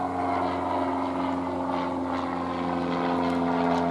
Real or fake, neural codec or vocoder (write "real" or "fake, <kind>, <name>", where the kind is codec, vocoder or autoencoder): real